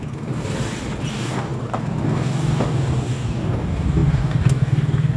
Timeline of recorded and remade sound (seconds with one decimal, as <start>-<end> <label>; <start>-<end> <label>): 0.0-0.4 remade; 0.4-1.1 recorded; 1.1-5.2 remade